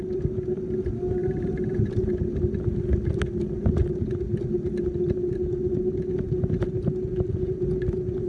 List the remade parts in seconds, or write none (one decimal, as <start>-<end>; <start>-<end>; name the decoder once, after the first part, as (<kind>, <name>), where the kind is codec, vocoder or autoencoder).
1.2-2.1 (vocoder, BigVGAN v2)